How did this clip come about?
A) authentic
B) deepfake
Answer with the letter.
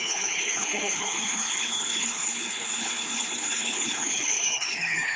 B